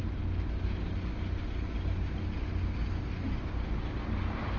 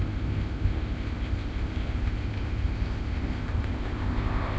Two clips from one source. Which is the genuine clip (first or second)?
first